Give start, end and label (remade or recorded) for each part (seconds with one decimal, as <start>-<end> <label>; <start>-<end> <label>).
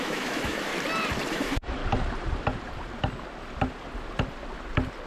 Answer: 0.0-0.7 remade; 0.7-1.3 recorded; 1.3-1.8 remade; 1.8-5.1 recorded